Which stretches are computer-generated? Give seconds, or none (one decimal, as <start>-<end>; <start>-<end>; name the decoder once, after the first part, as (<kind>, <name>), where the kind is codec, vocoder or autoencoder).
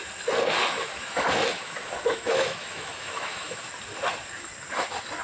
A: 0.6-3.7 (autoencoder, DAC-VAE)